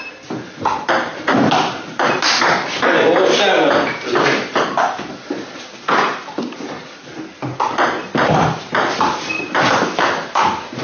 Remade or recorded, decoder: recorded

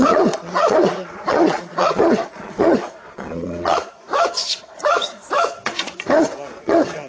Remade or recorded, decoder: remade, vocoder, Vocos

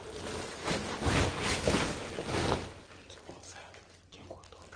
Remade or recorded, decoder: recorded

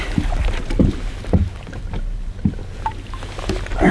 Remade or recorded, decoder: recorded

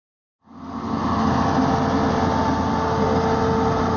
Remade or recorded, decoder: recorded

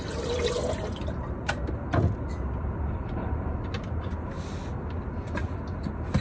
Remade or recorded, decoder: recorded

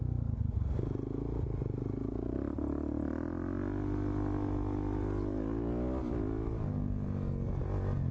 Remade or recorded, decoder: recorded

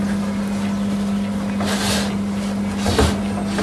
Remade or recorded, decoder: recorded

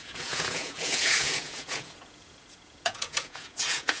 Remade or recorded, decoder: remade, vocoder, Vocos